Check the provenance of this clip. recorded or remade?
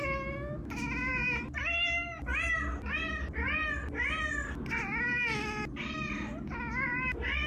recorded